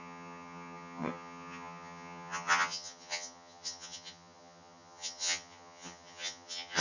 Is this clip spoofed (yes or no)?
yes